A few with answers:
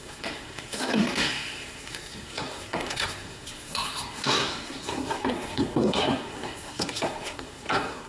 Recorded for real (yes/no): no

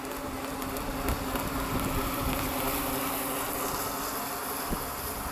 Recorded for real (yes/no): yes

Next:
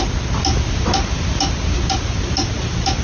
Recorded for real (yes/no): yes